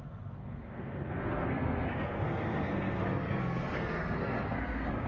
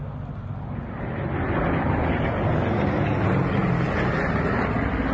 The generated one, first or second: first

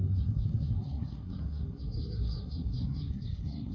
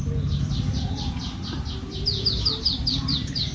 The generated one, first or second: first